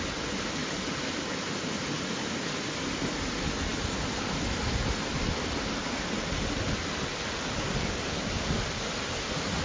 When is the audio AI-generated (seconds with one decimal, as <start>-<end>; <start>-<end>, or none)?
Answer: 0.6-2.2